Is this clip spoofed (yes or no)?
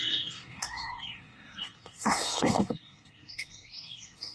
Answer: yes